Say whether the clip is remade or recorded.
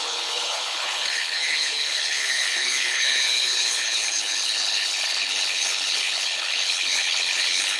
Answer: remade